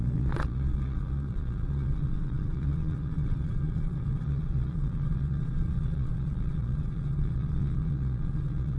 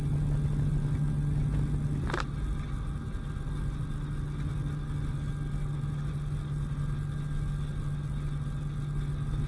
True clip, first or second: second